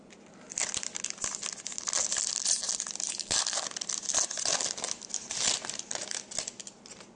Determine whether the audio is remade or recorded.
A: recorded